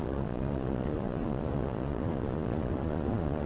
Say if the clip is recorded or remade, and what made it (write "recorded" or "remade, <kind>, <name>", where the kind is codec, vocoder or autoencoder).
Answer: remade, vocoder, Vocos